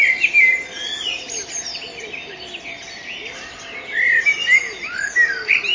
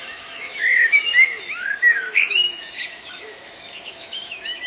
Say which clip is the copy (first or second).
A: second